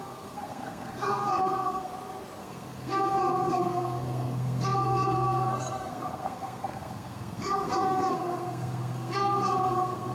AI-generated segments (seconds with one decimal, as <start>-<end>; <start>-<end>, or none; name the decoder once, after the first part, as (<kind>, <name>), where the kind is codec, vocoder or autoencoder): 0.0-1.9 (codec, SNAC); 2.4-10.1